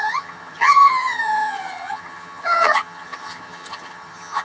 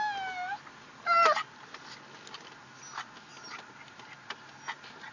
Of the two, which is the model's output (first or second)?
first